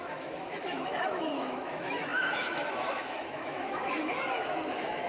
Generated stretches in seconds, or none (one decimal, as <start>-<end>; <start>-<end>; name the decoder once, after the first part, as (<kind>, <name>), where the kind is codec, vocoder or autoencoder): 0.0-5.1 (autoencoder, DAC-VAE)